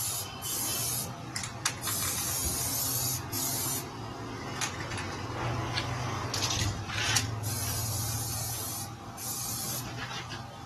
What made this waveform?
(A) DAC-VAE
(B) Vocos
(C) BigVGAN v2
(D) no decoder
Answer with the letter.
D